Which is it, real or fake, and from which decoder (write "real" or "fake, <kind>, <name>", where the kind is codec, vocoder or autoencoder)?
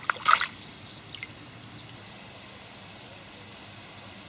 real